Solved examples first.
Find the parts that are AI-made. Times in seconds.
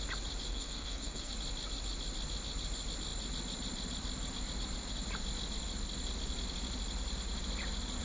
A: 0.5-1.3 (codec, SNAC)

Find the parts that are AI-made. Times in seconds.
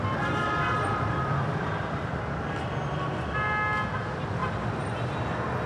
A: 0.9-2.1 (vocoder, BigVGAN v2)